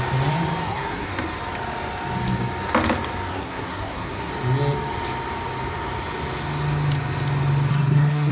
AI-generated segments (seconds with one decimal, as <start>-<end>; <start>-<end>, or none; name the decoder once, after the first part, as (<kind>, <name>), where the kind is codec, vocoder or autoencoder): 0.6-1.1 (codec, SNAC); 3.3-4.3; 7.7-8.3